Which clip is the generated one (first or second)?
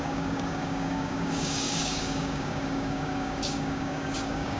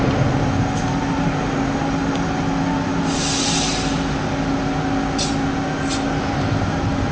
first